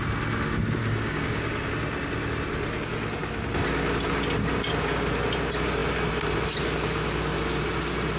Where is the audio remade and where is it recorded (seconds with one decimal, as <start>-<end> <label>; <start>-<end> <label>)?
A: 0.0-0.8 recorded; 0.8-1.7 remade; 1.7-8.2 recorded

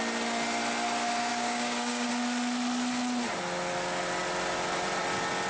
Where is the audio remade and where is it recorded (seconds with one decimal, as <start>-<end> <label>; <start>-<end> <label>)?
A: 0.0-1.3 recorded; 1.3-2.1 remade; 2.1-5.5 recorded